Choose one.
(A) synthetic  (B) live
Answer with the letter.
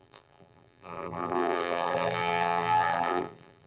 A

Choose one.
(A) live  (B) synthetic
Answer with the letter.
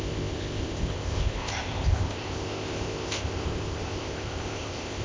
B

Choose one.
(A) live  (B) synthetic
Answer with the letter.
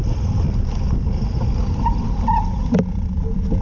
A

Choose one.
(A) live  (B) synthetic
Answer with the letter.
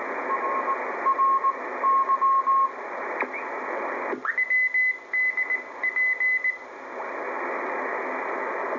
A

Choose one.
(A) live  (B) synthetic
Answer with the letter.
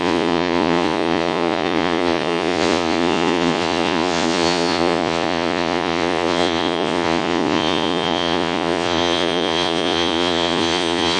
B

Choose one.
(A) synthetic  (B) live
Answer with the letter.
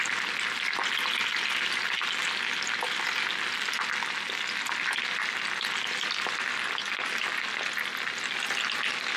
B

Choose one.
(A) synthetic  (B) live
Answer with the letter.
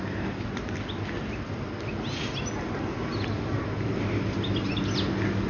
B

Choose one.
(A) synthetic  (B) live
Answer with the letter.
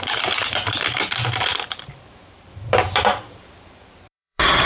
A